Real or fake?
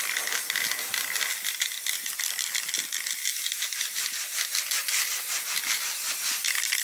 real